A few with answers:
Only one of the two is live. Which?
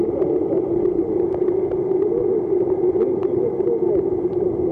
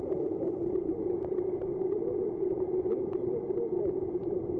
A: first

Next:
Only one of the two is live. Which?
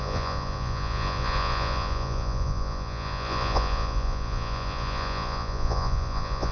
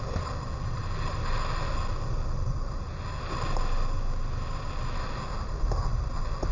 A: second